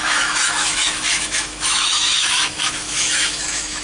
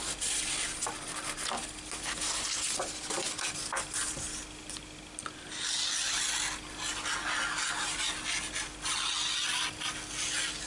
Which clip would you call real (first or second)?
second